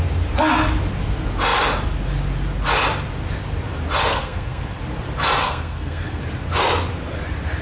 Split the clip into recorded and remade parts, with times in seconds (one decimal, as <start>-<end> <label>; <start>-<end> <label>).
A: 0.0-4.1 recorded; 4.1-4.8 remade; 4.8-5.4 recorded; 5.4-6.2 remade; 6.2-7.6 recorded